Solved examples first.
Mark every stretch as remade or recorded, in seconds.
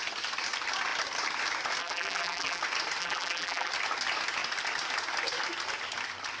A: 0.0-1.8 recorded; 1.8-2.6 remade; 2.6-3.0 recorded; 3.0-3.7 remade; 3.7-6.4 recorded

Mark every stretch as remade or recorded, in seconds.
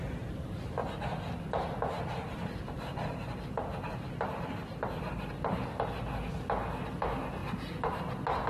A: 0.0-0.8 recorded; 0.8-5.6 remade; 5.6-7.4 recorded; 7.4-8.0 remade; 8.0-8.5 recorded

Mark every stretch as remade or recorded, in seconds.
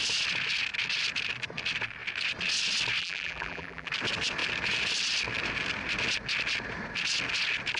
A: 0.0-3.0 recorded; 3.0-3.9 remade; 3.9-7.8 recorded